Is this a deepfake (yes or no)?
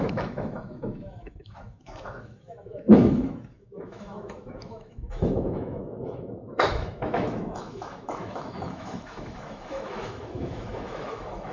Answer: yes